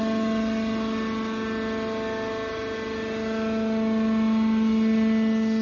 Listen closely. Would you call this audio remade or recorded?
recorded